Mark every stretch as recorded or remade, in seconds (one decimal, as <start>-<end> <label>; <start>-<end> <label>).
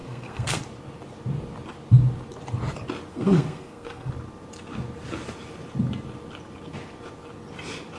0.0-0.6 remade; 0.6-3.1 recorded; 3.1-4.1 remade; 4.1-8.0 recorded